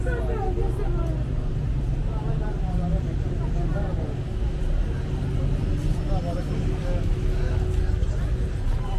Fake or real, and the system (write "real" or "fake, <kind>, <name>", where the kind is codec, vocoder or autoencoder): real